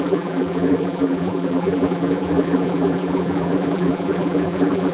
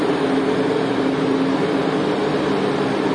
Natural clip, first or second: second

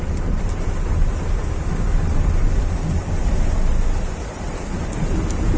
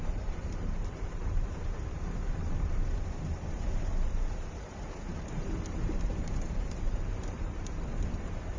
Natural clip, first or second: first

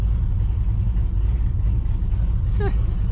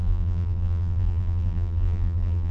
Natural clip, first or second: first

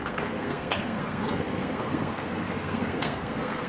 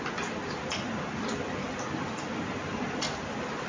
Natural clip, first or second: second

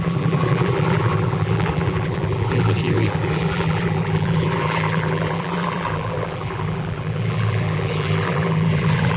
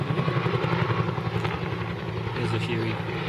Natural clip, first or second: second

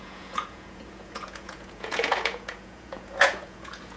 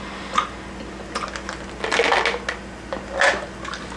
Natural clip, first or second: second